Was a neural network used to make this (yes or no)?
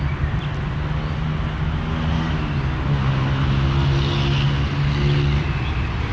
no